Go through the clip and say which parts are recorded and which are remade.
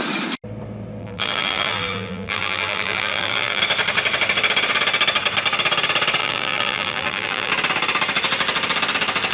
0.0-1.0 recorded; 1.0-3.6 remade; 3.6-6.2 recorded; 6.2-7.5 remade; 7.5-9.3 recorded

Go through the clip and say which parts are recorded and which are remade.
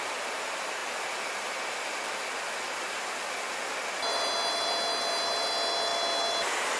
0.0-6.8 recorded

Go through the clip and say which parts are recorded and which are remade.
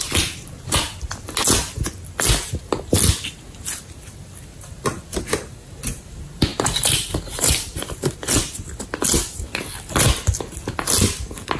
0.0-6.5 recorded; 6.5-8.2 remade; 8.2-11.6 recorded